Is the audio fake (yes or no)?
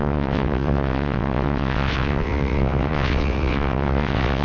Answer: yes